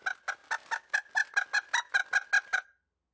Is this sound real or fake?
real